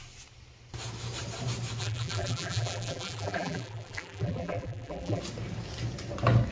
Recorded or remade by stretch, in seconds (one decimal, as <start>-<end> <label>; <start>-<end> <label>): 0.0-1.8 recorded; 1.8-5.2 remade; 5.2-6.5 recorded